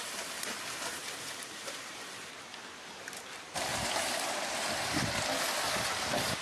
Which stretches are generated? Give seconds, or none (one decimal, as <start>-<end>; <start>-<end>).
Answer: 0.0-3.7; 6.0-6.4